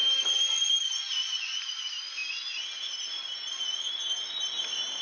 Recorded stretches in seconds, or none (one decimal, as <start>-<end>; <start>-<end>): 0.0-5.0